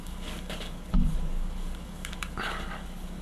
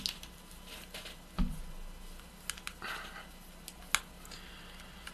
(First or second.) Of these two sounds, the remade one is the first